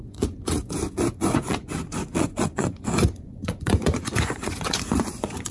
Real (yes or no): no